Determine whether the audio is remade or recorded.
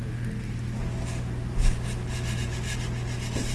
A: recorded